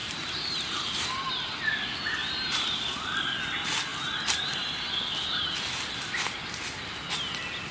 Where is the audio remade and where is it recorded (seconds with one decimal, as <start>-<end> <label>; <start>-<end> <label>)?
0.0-1.3 remade; 1.3-2.2 recorded; 2.2-2.8 remade; 2.8-3.9 recorded; 3.9-4.9 remade; 4.9-7.7 recorded